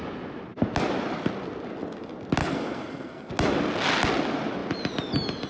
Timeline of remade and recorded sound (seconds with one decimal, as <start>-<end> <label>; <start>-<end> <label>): 0.0-2.4 recorded; 2.4-3.3 remade; 3.3-5.5 recorded